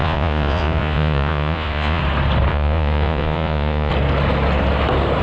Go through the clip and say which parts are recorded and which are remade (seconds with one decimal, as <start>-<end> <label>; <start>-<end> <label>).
0.0-2.0 remade; 2.0-2.5 recorded; 2.5-3.9 remade; 3.9-5.2 recorded

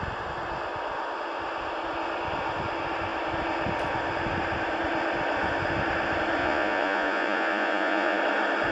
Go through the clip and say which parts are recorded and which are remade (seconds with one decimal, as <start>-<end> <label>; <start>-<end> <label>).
0.0-6.4 recorded; 6.4-8.2 remade; 8.2-8.7 recorded

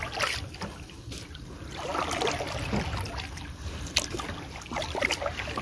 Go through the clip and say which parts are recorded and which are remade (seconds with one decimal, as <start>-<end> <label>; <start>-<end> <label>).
0.0-5.6 recorded